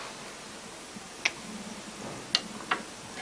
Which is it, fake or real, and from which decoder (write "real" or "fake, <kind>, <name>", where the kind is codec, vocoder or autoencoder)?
real